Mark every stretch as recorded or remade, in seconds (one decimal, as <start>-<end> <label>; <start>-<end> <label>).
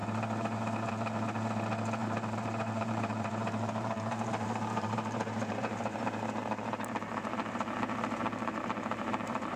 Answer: 0.0-2.0 recorded; 2.0-6.0 remade; 6.0-6.4 recorded; 6.4-9.6 remade